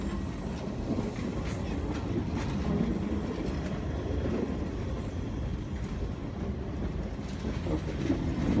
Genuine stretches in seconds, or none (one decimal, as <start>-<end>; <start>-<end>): 0.0-8.6

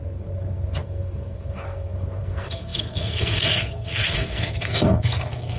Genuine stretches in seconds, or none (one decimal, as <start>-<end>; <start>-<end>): none

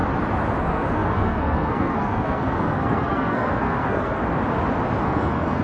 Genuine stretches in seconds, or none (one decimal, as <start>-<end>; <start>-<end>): 0.0-0.6; 4.2-5.0

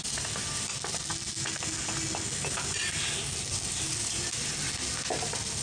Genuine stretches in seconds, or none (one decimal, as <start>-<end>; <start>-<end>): 0.0-5.6